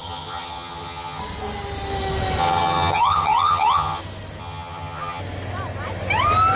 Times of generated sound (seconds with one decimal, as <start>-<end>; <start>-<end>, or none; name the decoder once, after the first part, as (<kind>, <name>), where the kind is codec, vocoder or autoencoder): 0.0-1.2 (vocoder, HiFi-GAN); 2.4-4.0; 4.4-5.2